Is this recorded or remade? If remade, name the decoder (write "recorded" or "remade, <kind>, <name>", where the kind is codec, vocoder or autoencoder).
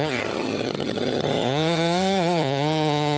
remade, vocoder, HiFi-GAN